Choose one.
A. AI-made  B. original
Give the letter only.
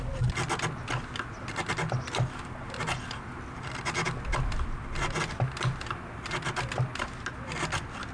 B